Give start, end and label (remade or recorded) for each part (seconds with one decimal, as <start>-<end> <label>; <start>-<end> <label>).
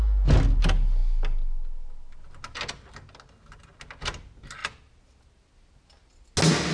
0.0-6.7 recorded